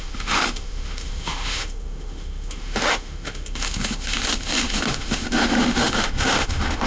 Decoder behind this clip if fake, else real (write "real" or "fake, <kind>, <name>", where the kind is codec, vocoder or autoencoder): fake, autoencoder, DAC-VAE